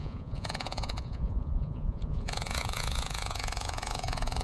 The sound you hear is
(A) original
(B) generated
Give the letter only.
B